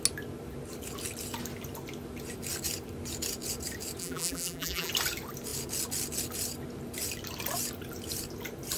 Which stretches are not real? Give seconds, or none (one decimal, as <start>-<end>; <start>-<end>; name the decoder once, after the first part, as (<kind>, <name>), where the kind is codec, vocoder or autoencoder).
4.0-4.9 (vocoder, BigVGAN v2)